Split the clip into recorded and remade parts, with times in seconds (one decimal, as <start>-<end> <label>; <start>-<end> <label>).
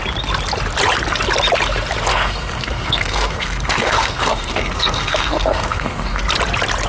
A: 0.0-2.1 recorded; 2.1-6.2 remade; 6.2-6.9 recorded